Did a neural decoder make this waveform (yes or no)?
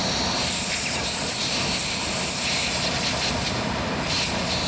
no